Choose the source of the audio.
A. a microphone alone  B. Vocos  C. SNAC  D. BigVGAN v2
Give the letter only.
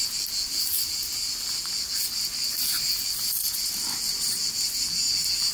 A